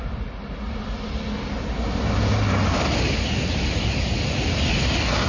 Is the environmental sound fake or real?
real